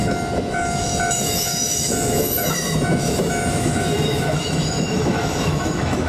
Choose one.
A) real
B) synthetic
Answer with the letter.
B